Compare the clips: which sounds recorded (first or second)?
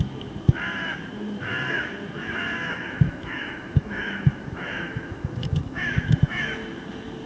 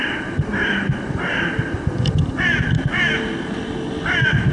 second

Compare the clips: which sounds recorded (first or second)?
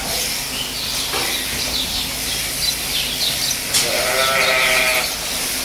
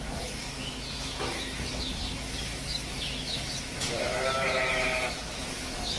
first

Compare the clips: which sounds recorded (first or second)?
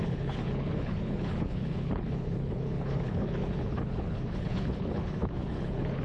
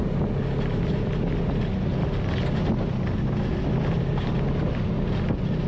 second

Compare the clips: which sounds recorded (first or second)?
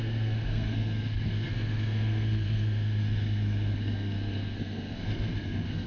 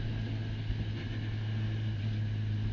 second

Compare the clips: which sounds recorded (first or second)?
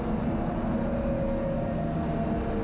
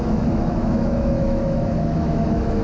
first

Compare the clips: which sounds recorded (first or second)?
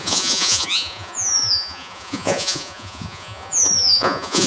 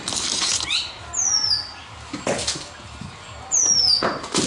second